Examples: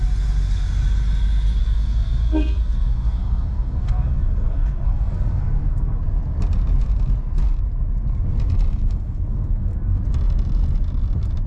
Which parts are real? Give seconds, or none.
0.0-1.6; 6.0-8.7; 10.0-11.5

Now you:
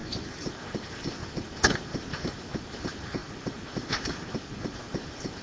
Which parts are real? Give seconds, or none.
1.2-1.9

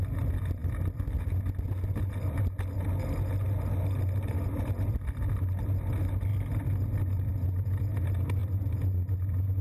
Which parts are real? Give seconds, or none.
0.0-9.6

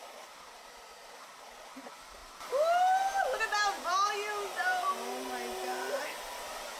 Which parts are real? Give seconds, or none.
0.0-6.8

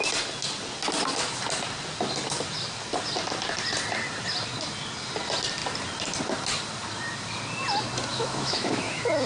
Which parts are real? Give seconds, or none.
0.0-8.1

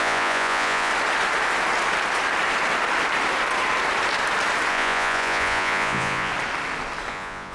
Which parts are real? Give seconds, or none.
0.9-4.7; 6.3-7.1

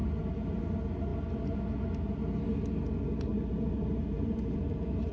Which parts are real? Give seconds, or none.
0.6-3.3

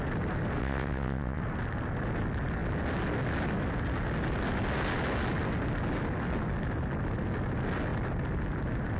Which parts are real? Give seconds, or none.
0.0-0.6; 1.4-9.0